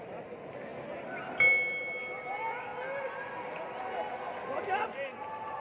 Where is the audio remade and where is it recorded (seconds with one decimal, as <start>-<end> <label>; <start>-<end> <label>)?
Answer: 0.0-5.6 recorded